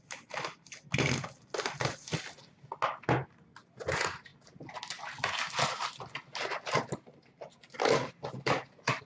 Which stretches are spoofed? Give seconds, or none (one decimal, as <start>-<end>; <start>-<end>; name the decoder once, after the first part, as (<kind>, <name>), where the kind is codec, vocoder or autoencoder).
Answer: none